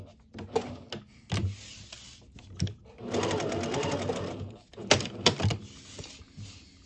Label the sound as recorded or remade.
recorded